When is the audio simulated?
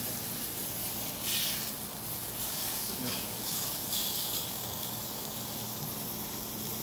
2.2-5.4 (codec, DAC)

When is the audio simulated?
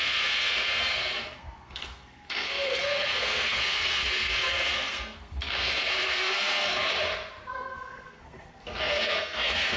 0.0-6.9 (codec, SNAC); 7.5-9.8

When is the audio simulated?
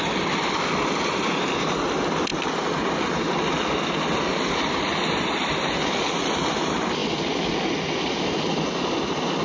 none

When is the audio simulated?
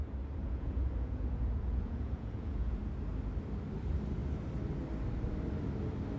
0.4-2.8 (vocoder, Vocos)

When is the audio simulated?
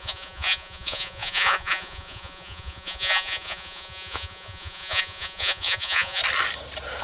0.0-6.2 (vocoder, Vocos)